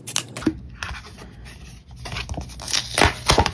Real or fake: real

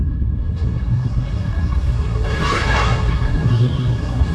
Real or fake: fake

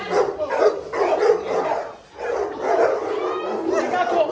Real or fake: real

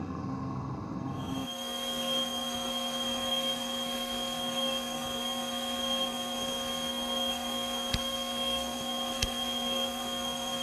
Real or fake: fake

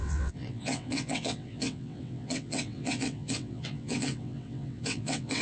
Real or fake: fake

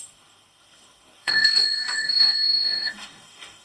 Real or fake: fake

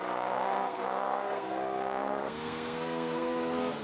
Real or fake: fake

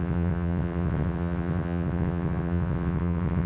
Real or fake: fake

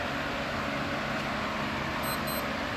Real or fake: real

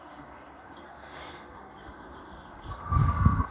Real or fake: fake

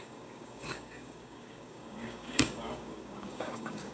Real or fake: fake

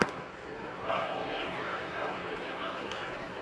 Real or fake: fake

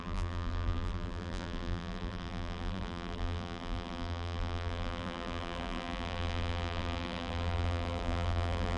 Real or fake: fake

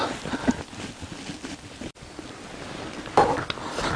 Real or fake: real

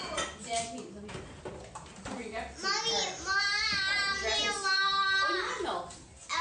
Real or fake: real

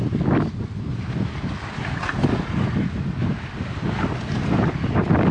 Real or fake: real